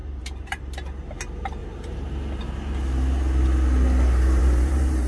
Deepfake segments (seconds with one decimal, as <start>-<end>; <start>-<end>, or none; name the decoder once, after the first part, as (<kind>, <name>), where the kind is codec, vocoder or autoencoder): 0.0-0.6 (vocoder, BigVGAN v2); 1.6-2.1; 4.4-5.1